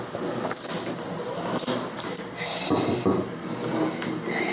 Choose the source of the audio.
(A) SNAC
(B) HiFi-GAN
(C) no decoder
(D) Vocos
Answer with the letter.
C